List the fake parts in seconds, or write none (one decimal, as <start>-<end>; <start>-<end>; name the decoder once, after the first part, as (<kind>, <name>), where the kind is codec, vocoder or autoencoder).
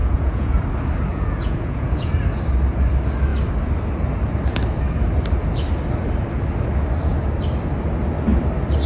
0.0-0.6 (vocoder, Vocos); 1.1-2.1